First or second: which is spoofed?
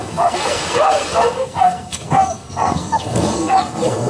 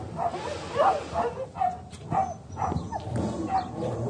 first